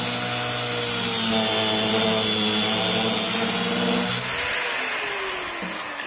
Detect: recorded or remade recorded